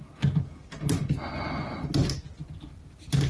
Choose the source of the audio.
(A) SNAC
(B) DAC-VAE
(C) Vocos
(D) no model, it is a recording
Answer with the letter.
D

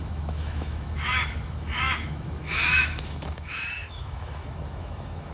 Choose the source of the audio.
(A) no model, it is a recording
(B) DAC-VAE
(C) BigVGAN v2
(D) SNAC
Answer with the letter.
B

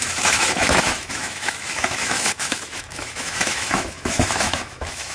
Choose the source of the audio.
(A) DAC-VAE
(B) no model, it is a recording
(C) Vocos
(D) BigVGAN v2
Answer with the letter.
A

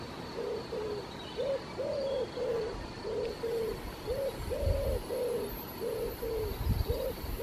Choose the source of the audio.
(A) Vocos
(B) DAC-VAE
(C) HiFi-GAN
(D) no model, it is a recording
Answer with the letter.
D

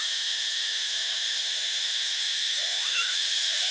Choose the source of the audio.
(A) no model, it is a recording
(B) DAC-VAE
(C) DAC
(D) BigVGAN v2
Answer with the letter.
B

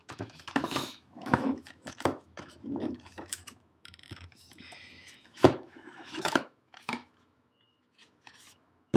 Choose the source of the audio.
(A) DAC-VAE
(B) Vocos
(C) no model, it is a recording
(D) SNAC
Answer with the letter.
A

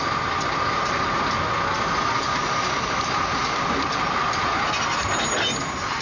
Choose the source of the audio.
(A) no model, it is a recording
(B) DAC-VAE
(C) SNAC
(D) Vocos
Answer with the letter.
A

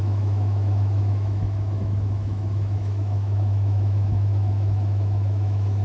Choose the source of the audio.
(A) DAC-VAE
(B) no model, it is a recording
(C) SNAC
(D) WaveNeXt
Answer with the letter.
A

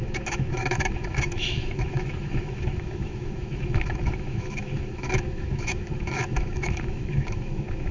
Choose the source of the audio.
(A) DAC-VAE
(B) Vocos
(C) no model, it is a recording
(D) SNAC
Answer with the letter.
A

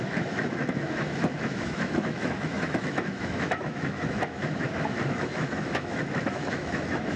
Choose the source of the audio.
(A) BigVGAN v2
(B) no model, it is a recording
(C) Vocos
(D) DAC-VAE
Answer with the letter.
D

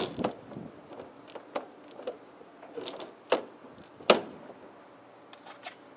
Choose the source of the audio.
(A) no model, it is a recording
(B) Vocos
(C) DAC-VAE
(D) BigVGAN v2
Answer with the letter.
A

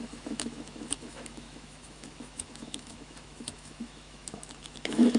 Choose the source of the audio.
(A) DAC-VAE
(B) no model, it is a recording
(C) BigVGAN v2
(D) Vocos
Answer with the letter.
A